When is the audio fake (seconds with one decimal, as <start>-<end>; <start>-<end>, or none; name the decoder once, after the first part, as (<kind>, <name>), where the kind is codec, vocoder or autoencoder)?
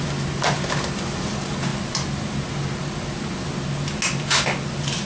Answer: none